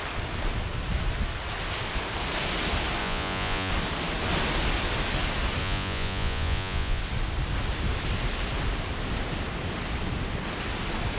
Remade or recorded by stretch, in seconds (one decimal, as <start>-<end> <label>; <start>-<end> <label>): 0.0-3.0 recorded; 3.0-3.7 remade; 3.7-5.6 recorded; 5.6-7.0 remade; 7.0-11.2 recorded